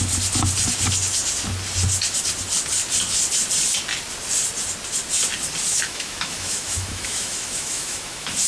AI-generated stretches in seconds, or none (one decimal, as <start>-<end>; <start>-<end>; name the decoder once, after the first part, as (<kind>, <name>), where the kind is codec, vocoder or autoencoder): 5.7-8.5 (autoencoder, DAC-VAE)